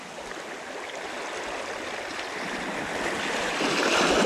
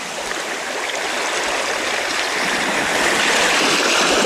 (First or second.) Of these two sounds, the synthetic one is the second